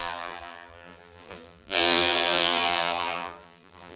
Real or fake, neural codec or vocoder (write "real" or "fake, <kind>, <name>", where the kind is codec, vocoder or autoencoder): fake, vocoder, BigVGAN v2